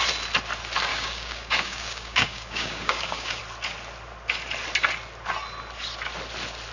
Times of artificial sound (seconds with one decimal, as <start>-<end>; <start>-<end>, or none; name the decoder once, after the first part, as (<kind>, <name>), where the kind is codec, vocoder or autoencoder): 0.9-3.4 (codec, DAC)